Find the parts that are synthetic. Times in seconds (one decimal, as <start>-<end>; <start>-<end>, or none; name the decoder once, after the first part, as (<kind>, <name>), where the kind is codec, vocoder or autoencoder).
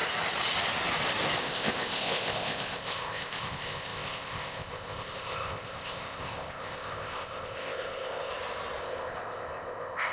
1.4-8.3 (codec, ZipCodec); 8.8-10.1